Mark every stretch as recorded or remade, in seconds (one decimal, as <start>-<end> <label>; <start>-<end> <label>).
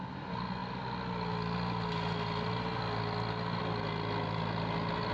0.0-5.1 recorded